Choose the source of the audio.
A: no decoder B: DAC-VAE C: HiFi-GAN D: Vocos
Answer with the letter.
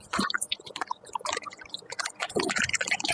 D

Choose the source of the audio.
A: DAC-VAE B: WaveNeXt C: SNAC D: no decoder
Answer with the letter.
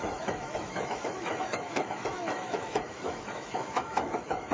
A